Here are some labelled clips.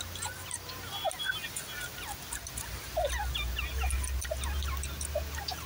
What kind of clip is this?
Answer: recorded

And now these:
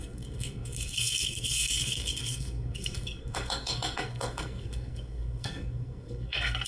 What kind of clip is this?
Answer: remade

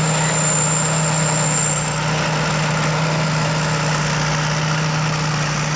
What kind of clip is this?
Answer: recorded